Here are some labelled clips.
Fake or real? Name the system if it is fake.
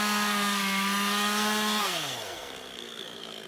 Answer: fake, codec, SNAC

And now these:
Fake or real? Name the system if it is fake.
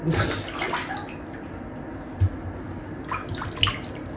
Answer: real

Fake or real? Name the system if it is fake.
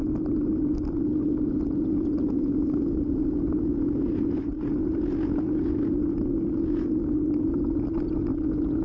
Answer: real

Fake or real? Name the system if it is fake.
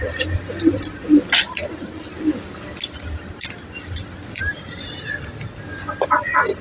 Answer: real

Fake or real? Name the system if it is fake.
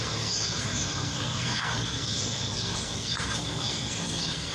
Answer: fake, codec, SNAC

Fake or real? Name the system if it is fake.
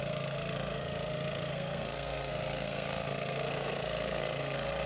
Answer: fake, codec, SNAC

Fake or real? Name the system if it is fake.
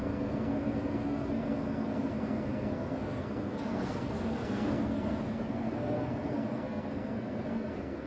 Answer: fake, codec, SNAC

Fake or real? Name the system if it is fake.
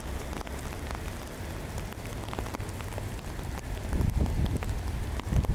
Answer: real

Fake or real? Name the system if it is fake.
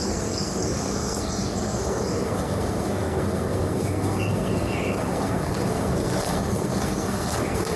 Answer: fake, codec, SNAC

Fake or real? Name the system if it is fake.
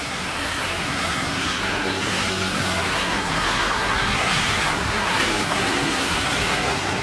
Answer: fake, codec, SNAC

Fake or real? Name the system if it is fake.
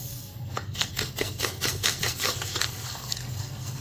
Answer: fake, codec, SNAC